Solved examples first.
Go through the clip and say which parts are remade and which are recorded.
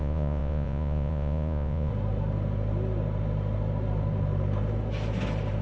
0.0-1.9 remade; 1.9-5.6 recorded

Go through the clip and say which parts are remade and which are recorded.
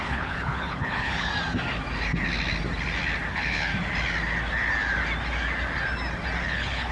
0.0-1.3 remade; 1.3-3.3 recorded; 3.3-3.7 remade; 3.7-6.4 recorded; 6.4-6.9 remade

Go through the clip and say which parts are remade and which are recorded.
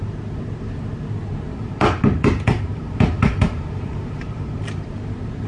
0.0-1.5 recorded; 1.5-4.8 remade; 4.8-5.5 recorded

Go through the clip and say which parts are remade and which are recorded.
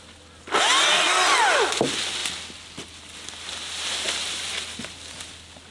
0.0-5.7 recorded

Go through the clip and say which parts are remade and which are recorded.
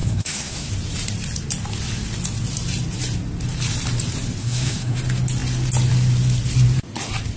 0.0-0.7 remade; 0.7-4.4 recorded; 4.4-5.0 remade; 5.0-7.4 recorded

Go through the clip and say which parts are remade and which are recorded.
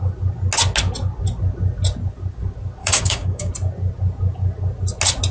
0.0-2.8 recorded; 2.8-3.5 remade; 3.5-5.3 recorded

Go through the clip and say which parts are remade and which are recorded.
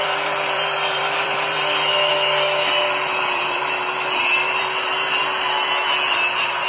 0.0-2.1 remade; 2.1-2.8 recorded; 2.8-5.2 remade; 5.2-6.1 recorded; 6.1-6.7 remade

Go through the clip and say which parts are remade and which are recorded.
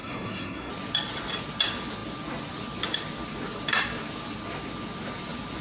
0.0-0.7 remade; 0.7-5.6 recorded